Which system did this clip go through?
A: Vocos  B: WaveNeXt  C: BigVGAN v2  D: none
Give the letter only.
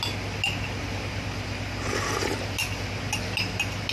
D